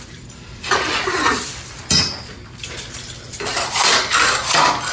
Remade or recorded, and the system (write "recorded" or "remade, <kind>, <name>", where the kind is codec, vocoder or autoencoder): remade, vocoder, BigVGAN v2